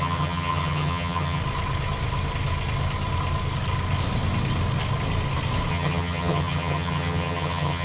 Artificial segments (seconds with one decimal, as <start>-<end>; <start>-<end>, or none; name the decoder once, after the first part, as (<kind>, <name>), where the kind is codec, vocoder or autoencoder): 0.0-1.4 (vocoder, HiFi-GAN); 5.7-7.8